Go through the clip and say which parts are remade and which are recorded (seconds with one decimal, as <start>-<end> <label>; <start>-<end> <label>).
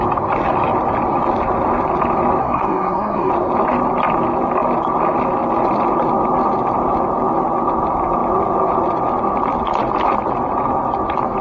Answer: 0.0-2.4 recorded; 2.4-3.3 remade; 3.3-11.4 recorded